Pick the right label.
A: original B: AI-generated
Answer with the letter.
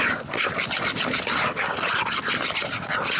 A